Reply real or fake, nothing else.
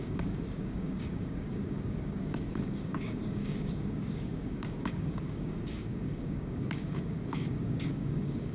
fake